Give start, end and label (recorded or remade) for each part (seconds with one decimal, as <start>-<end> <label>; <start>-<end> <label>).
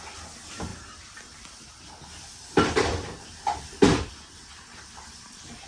0.0-0.7 recorded; 0.7-4.1 remade; 4.1-5.7 recorded